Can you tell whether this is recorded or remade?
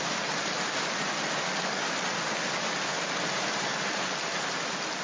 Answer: recorded